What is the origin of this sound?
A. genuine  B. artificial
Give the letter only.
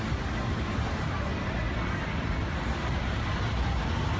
A